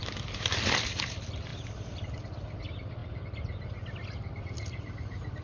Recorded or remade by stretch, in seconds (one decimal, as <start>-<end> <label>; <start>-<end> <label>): 0.0-5.4 recorded

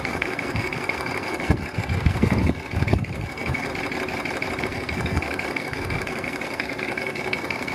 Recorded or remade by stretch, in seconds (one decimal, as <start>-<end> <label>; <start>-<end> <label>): 0.0-3.7 remade; 3.7-4.6 recorded; 4.6-7.7 remade

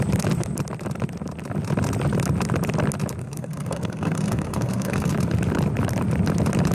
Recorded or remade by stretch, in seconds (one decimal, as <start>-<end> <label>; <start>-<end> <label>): 0.0-3.2 recorded; 3.2-5.1 remade; 5.1-6.7 recorded

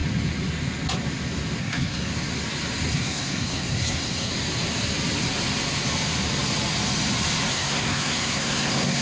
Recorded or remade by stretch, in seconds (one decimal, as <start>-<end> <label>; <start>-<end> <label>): 0.0-1.6 recorded; 1.6-2.1 remade; 2.1-2.9 recorded; 2.9-4.3 remade; 4.3-7.5 recorded; 7.5-9.0 remade

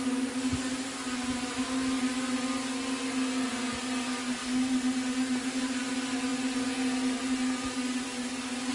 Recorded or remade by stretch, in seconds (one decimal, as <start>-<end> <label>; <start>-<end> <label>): 0.0-8.7 recorded

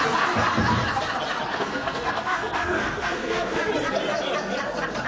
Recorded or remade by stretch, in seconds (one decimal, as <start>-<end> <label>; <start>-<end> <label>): 0.0-1.5 recorded; 1.5-3.6 remade; 3.6-5.1 recorded